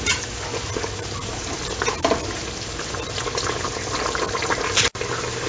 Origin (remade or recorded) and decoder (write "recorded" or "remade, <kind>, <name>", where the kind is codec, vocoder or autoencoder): recorded